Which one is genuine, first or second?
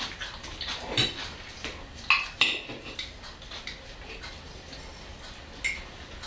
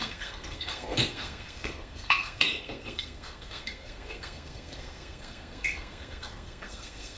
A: first